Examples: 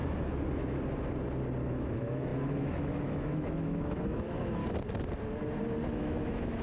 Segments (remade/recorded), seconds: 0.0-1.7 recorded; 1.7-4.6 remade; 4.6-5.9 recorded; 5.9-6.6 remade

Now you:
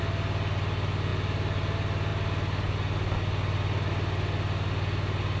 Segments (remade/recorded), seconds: 0.0-5.4 recorded

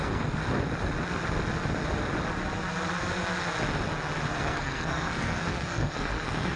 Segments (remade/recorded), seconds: 0.0-0.4 remade; 0.4-4.3 recorded; 4.3-6.6 remade

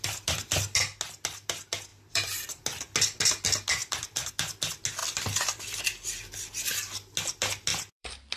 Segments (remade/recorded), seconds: 0.0-1.9 recorded; 1.9-2.6 remade; 2.6-3.8 recorded; 3.8-4.3 remade; 4.3-5.0 recorded; 5.0-6.5 remade; 6.5-7.7 recorded; 7.7-8.4 remade

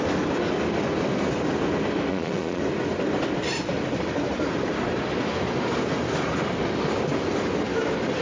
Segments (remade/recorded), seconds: 0.0-2.1 recorded; 2.1-2.6 remade; 2.6-8.2 recorded

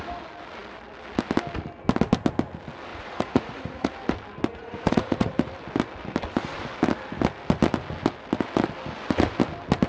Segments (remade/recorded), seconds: 0.0-2.9 recorded; 2.9-3.9 remade; 3.9-4.5 recorded; 4.5-5.3 remade; 5.3-9.9 recorded

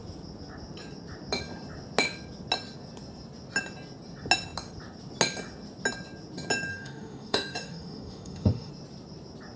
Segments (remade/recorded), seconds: 0.0-6.7 recorded; 6.7-8.7 remade; 8.7-9.6 recorded